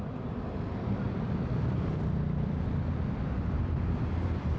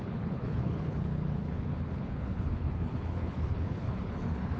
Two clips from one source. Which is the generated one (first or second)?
second